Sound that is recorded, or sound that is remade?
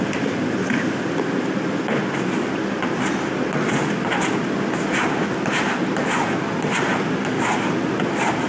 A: recorded